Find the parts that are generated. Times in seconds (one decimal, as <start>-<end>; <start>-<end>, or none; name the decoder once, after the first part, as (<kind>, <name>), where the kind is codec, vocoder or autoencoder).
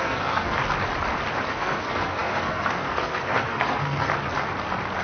0.0-0.6 (codec, SNAC); 1.5-4.1